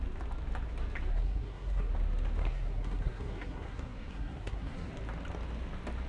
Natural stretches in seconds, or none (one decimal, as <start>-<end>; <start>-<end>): 0.0-1.1; 1.9-2.4; 4.9-6.1